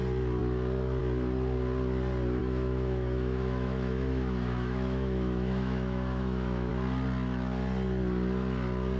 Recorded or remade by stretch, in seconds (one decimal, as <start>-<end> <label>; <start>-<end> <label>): 0.0-2.4 recorded; 2.4-6.7 remade; 6.7-9.0 recorded